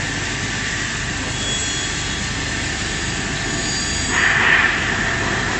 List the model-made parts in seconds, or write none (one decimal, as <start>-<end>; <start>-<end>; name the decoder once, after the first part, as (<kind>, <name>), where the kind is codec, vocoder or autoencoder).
none